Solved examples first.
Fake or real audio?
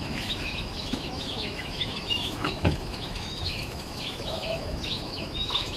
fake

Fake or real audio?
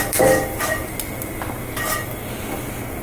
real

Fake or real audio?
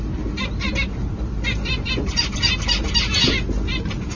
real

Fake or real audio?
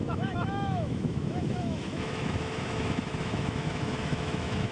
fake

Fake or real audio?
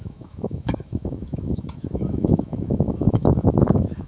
fake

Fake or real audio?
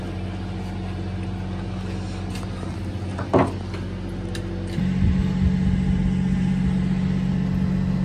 real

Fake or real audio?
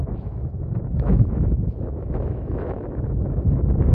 fake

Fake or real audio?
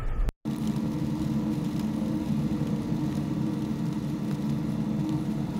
real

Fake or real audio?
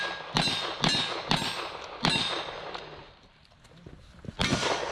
real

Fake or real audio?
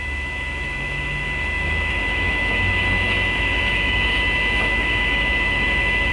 fake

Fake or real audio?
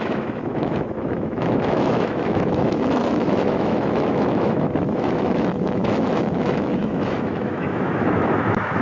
fake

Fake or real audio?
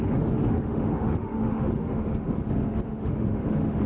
fake